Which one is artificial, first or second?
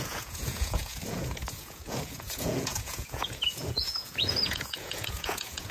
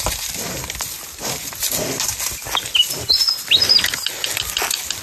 first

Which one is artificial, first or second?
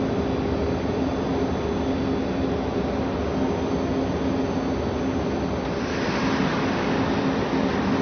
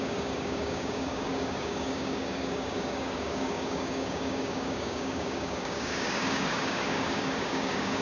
second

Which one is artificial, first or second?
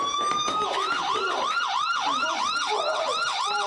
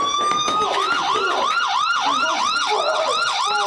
first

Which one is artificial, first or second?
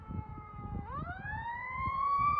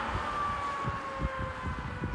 first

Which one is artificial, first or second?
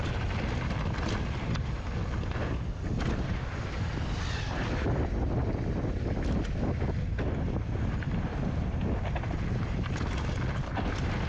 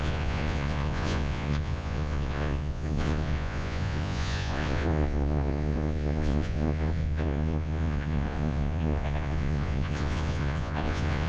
second